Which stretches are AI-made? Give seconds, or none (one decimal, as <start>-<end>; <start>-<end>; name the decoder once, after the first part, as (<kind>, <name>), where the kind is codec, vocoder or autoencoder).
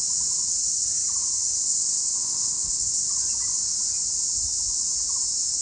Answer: 1.6-3.1 (codec, ZipCodec)